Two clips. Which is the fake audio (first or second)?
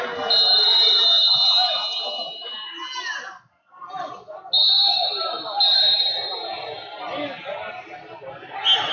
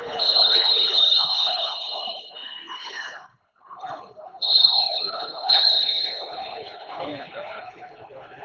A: second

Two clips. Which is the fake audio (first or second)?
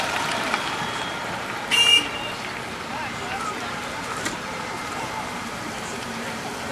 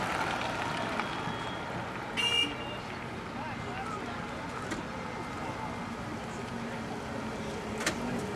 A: first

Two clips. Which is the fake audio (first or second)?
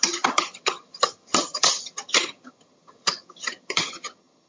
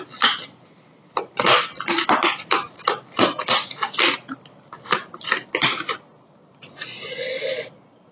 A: first